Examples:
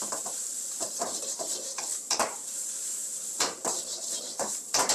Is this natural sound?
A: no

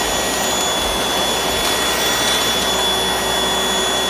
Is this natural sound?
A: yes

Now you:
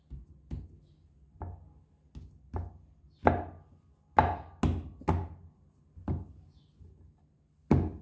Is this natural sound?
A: yes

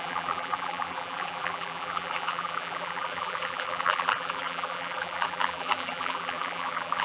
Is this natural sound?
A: no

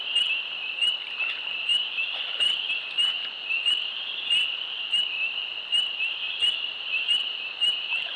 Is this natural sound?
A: no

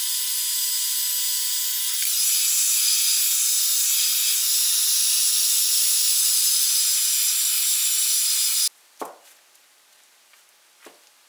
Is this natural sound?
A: yes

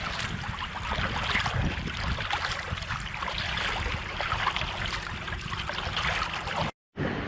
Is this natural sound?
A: yes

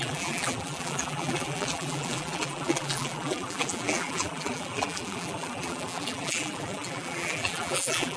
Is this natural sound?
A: no